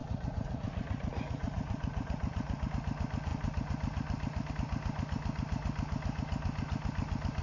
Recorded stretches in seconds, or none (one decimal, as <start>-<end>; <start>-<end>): 2.7-7.4